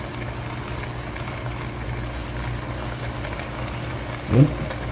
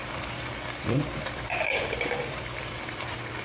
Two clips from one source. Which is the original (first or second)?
first